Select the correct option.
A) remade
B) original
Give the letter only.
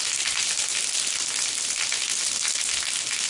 B